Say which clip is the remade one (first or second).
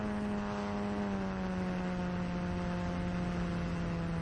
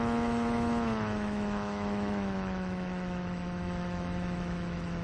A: second